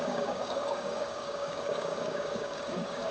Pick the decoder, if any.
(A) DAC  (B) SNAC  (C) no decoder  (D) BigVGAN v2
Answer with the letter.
A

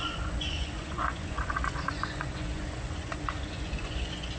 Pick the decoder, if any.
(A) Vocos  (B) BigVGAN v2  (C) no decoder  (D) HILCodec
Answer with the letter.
A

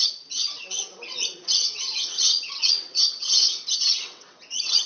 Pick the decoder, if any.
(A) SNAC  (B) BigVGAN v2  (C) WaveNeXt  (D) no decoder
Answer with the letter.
C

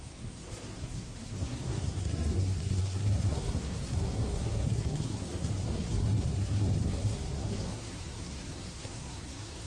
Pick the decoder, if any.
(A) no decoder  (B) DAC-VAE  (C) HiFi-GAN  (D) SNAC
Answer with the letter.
D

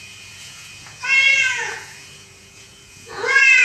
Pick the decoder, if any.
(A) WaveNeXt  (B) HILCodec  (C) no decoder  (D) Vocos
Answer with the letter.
D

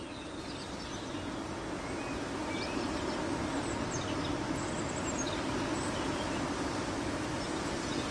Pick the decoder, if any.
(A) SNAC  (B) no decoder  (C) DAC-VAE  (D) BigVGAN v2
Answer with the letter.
B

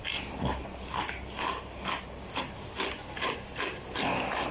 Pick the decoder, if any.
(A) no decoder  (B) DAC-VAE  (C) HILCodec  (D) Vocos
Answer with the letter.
A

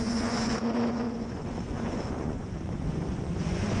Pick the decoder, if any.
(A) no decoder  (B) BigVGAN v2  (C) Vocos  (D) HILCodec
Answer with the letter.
C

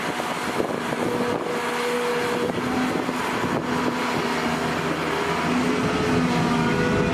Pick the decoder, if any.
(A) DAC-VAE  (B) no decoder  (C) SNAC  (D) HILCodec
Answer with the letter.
B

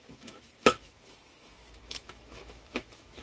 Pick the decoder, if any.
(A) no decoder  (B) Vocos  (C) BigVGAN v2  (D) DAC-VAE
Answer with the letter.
D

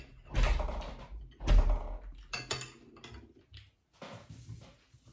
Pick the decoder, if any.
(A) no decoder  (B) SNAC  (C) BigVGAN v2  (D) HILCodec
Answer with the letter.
A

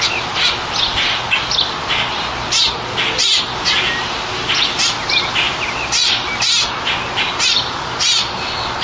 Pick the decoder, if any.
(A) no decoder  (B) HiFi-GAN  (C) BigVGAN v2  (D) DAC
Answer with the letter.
A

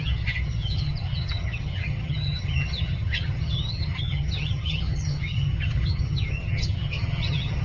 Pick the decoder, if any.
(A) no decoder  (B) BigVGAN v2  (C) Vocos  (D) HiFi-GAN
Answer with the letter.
D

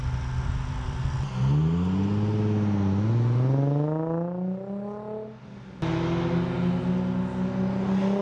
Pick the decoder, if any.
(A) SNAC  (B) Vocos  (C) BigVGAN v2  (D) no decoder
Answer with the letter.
D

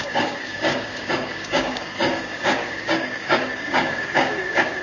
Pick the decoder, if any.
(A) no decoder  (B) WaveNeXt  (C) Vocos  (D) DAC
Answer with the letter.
D